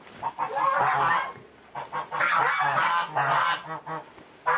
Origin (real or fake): real